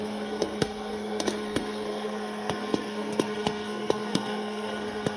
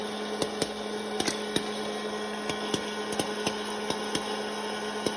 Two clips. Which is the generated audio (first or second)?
first